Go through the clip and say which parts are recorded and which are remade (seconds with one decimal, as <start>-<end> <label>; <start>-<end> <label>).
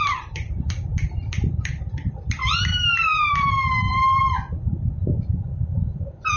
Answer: 0.0-3.1 remade; 3.1-4.2 recorded; 4.2-6.4 remade